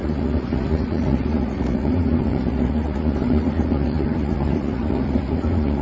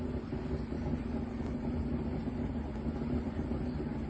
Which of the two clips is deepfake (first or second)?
first